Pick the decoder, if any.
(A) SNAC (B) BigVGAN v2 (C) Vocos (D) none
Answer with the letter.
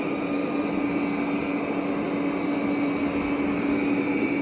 D